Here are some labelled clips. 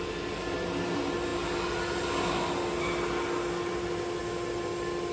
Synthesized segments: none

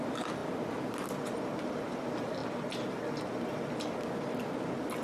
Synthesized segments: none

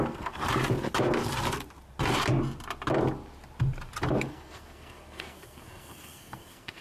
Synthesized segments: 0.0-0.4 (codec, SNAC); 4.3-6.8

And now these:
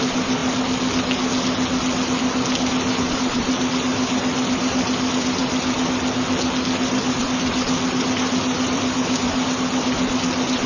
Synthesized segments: 0.0-0.4 (vocoder, BigVGAN v2); 3.1-5.4; 6.9-10.7

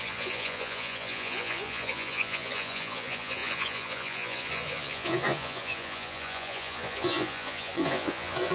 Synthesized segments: 0.0-8.5 (vocoder, Vocos)